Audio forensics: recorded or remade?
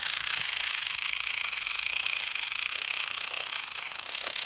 remade